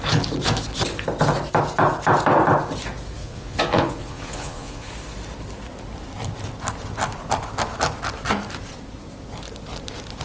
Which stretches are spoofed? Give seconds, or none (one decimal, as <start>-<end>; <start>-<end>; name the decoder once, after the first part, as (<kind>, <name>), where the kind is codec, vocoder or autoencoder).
3.2-4.9 (vocoder, Vocos)